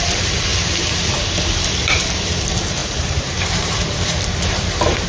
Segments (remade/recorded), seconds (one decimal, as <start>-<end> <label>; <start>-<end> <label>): 0.0-0.5 remade; 0.5-1.2 recorded; 1.2-5.1 remade